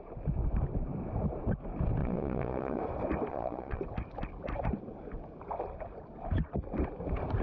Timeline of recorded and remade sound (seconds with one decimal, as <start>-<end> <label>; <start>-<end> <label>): 0.0-2.0 recorded; 2.0-2.8 remade; 2.8-3.3 recorded; 3.3-3.8 remade; 3.8-7.4 recorded